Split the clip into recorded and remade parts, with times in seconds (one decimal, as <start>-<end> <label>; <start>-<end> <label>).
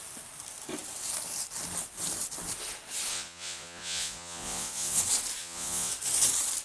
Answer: 0.0-3.1 recorded; 3.1-5.0 remade; 5.0-5.4 recorded; 5.4-5.9 remade; 5.9-6.6 recorded